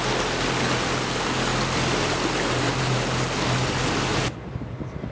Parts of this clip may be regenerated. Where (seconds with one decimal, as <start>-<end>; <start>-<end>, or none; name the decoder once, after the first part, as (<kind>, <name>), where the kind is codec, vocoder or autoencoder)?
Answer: none